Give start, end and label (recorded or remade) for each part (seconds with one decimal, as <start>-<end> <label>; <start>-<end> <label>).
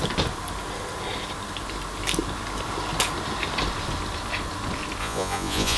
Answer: 0.0-5.0 recorded; 5.0-5.8 remade